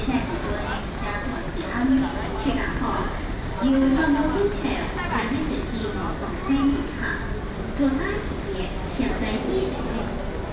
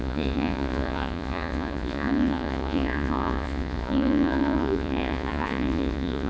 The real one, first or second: first